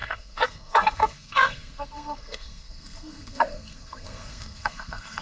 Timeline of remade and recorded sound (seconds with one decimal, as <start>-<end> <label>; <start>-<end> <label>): 0.0-5.2 remade